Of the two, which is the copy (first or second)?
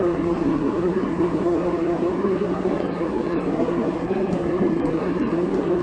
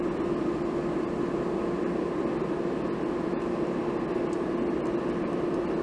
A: first